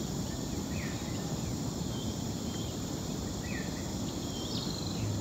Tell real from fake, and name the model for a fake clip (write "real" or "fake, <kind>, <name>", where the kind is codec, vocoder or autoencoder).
real